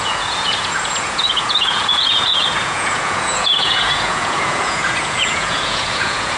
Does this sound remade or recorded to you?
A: remade